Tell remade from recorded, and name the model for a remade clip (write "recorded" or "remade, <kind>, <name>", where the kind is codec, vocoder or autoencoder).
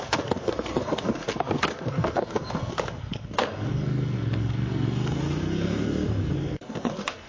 remade, codec, SNAC